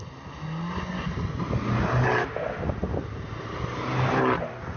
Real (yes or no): yes